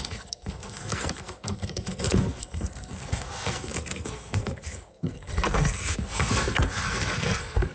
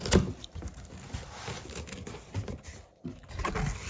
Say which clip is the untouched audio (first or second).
second